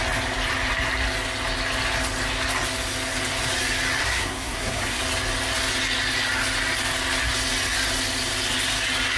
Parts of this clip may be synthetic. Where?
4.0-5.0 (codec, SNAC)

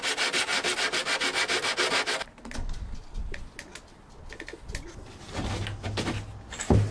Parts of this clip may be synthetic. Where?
none

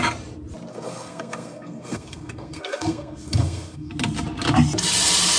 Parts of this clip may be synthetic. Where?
0.7-3.9 (codec, SNAC)

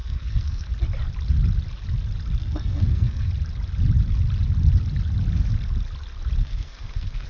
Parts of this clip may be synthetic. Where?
0.0-0.7 (codec, SNAC); 2.4-3.3; 6.4-7.3

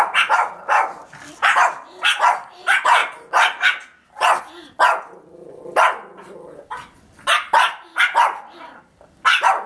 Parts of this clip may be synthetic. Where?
none

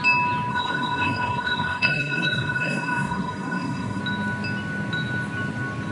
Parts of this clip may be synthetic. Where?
0.5-4.0 (codec, SNAC)